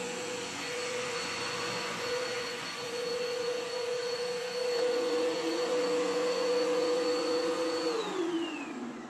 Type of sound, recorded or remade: remade